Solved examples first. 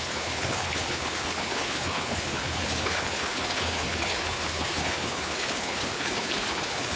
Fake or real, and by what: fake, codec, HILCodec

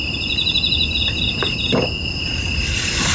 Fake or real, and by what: real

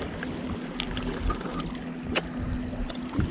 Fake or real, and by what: real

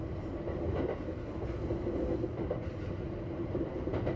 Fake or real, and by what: real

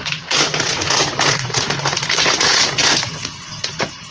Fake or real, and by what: fake, vocoder, Vocos